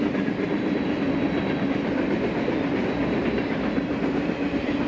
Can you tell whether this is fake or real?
real